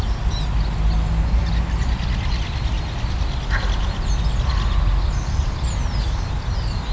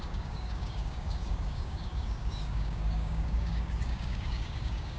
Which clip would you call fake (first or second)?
second